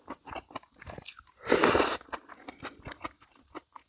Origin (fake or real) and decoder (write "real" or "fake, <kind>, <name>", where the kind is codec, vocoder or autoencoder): real